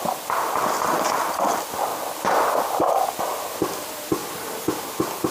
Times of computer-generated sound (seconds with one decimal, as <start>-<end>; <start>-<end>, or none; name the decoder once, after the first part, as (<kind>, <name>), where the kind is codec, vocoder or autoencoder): none